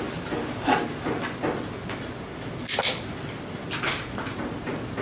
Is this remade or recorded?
recorded